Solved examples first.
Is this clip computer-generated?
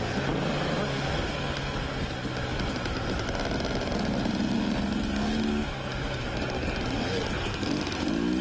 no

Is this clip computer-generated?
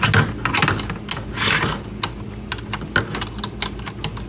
no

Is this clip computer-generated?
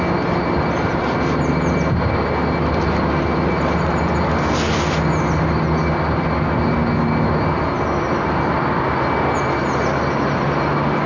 no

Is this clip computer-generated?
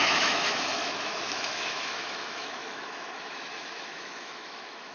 yes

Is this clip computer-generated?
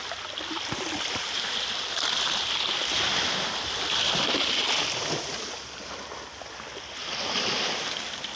no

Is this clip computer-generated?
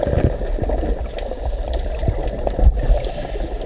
no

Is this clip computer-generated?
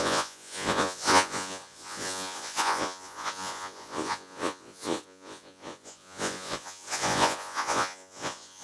yes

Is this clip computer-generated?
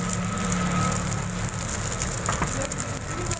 no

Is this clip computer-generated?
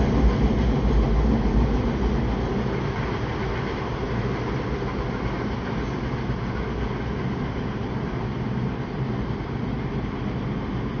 no